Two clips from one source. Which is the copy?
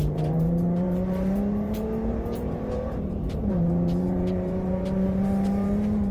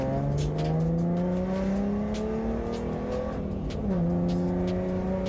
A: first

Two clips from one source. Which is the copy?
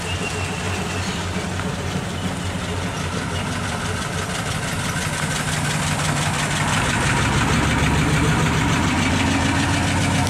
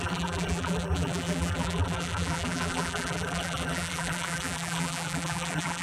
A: second